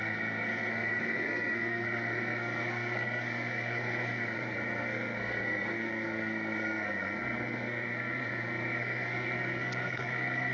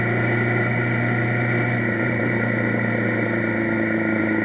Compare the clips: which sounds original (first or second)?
second